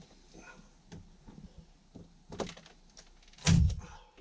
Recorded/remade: recorded